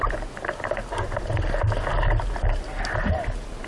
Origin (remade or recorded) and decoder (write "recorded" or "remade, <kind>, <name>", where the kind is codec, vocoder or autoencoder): recorded